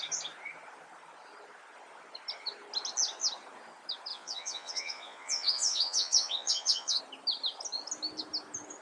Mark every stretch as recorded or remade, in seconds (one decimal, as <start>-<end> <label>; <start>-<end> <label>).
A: 0.0-4.1 recorded; 4.1-7.0 remade; 7.0-8.8 recorded